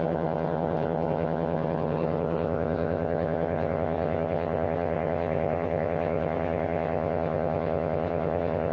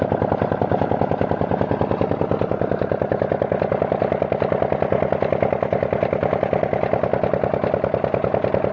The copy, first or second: first